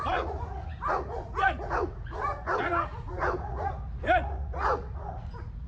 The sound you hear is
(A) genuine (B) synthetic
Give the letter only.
B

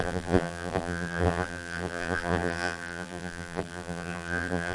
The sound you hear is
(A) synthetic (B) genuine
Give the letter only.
A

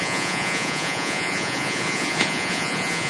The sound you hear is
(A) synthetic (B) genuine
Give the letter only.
A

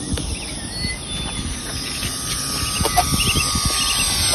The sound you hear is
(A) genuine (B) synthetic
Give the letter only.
A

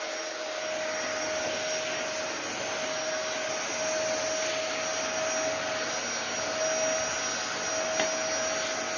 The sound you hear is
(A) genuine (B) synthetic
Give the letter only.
A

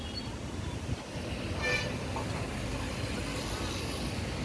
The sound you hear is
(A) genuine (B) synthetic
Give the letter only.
A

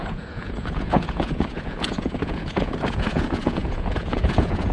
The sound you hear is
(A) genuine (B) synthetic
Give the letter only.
B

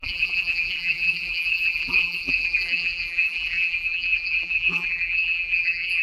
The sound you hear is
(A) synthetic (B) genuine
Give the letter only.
A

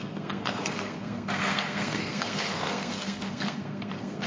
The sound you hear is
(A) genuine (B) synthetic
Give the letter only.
B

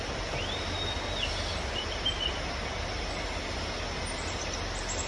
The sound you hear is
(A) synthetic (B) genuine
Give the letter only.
B